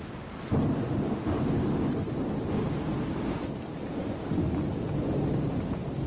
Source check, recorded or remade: recorded